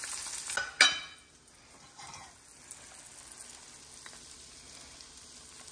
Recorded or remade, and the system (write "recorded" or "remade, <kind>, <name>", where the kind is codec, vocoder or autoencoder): recorded